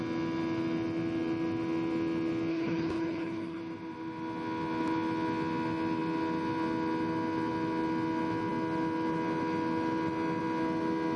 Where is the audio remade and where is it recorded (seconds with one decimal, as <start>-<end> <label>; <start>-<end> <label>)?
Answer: 0.0-2.5 recorded; 2.5-3.6 remade; 3.6-11.2 recorded